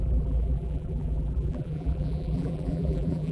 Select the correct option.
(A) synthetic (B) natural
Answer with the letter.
A